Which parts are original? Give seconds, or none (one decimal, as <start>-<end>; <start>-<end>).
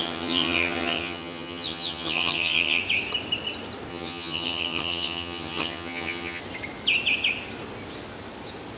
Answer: 2.8-3.9; 6.4-8.8